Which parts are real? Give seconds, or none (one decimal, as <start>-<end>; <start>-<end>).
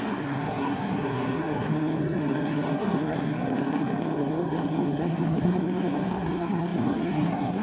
none